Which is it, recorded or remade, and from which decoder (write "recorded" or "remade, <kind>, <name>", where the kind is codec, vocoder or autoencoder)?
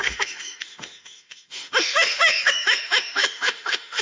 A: remade, autoencoder, DAC-VAE